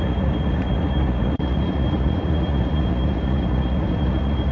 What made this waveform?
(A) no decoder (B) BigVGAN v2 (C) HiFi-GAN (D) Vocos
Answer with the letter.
D